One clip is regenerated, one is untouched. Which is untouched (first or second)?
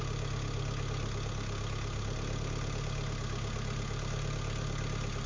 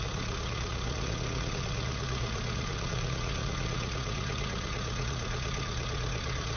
first